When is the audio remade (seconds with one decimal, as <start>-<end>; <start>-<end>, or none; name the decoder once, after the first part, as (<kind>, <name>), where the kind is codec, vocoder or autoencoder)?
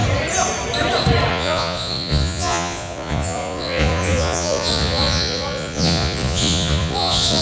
1.3-7.4 (vocoder, Vocos)